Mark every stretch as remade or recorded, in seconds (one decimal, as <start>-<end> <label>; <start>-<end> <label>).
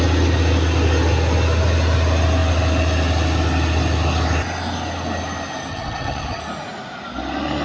0.0-5.7 recorded; 5.7-6.4 remade; 6.4-7.6 recorded